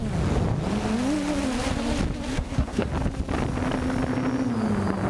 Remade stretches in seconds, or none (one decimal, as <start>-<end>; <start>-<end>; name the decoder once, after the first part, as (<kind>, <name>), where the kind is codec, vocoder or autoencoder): 2.3-2.9 (codec, SNAC)